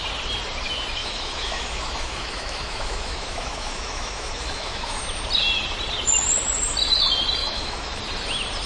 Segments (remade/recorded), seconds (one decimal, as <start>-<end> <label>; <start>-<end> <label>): 0.0-1.0 recorded; 1.0-5.0 remade; 5.0-7.4 recorded; 7.4-8.0 remade; 8.0-8.7 recorded